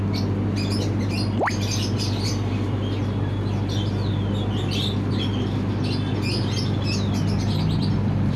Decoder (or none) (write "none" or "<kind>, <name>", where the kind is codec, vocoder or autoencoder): none